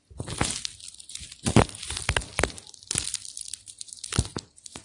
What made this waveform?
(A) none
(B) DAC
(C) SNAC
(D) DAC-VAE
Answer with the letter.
A